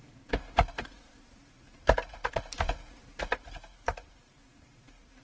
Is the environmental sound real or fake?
fake